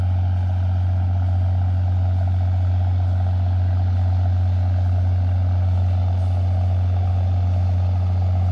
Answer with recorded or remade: recorded